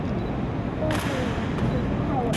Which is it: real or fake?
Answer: real